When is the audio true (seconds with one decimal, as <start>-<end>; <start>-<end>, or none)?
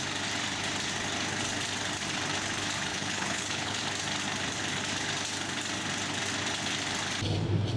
0.0-2.9; 3.8-7.8